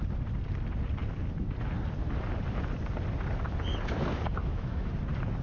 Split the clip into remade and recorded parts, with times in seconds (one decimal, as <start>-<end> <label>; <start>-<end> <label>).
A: 0.0-4.4 recorded; 4.4-4.9 remade; 4.9-5.4 recorded